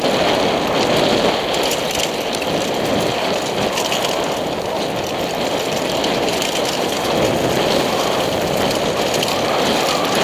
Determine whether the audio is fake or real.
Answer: real